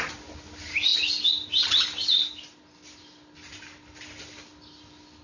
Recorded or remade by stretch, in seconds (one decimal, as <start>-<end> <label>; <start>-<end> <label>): 0.0-5.2 recorded